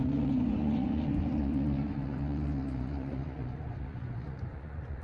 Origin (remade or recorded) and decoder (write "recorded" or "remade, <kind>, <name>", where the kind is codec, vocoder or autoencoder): remade, vocoder, Vocos